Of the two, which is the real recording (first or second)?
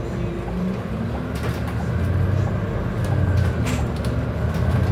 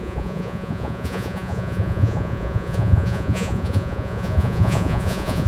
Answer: first